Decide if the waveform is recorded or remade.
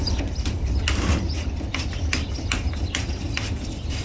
recorded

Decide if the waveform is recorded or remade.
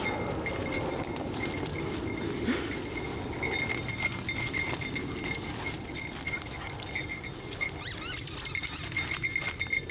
recorded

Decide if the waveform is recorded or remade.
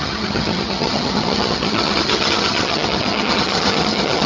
remade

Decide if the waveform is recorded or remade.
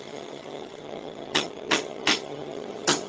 remade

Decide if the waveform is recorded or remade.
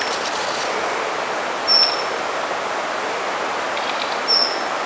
recorded